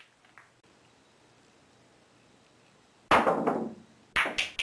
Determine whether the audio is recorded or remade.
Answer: recorded